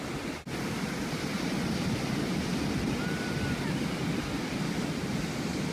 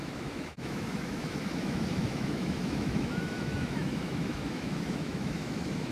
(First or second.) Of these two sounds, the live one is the first